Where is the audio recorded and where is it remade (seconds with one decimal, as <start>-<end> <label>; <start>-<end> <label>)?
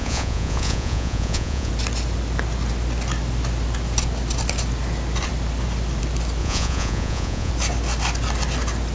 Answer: 0.0-1.7 remade; 1.7-6.4 recorded; 6.4-7.5 remade; 7.5-8.9 recorded